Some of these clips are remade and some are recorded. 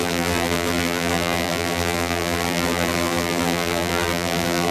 remade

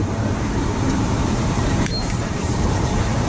remade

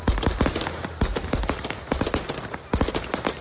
remade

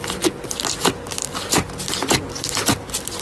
recorded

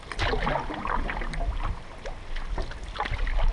recorded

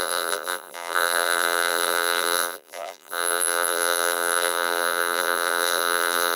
remade